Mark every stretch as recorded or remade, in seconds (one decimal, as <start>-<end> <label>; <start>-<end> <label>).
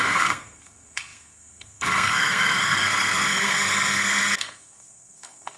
0.0-5.6 remade